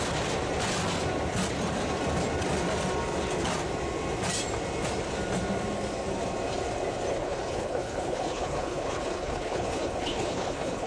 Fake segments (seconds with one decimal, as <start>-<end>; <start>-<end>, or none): 7.1-10.9